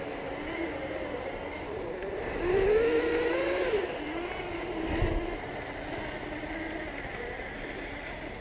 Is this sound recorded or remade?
recorded